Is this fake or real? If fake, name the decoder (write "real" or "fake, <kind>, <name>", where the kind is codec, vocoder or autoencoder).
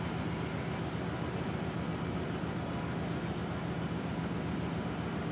real